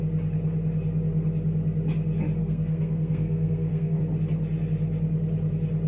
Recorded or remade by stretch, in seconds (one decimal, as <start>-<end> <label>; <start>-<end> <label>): 0.0-2.4 recorded; 2.4-4.0 remade; 4.0-5.9 recorded

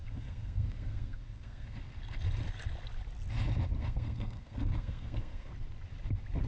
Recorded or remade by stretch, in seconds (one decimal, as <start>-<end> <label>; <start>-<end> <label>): 0.0-1.8 remade; 1.8-3.8 recorded; 3.8-5.5 remade; 5.5-6.5 recorded

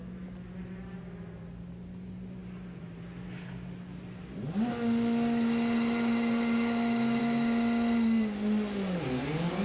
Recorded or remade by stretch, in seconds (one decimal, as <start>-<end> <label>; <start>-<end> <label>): 0.0-9.6 recorded

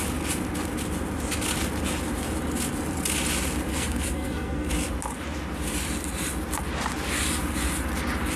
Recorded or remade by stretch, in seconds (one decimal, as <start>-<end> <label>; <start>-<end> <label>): 0.0-3.7 recorded; 3.7-4.7 remade; 4.7-8.4 recorded